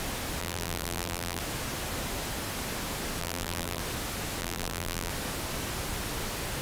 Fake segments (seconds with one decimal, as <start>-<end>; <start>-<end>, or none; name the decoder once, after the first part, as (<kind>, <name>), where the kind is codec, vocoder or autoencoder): 0.4-1.4 (vocoder, BigVGAN v2); 3.2-3.8; 4.4-5.1